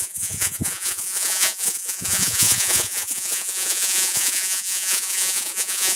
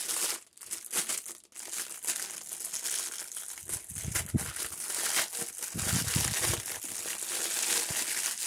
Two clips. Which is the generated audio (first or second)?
first